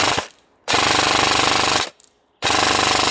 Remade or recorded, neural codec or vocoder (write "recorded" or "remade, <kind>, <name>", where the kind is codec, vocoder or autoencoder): recorded